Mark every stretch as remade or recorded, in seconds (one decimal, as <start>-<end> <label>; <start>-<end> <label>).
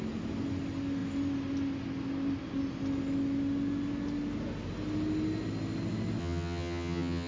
0.0-6.2 recorded; 6.2-7.3 remade